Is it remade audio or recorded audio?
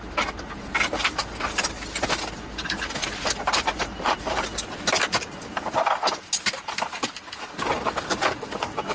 recorded